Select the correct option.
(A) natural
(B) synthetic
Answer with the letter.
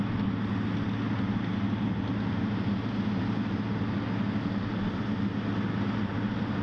A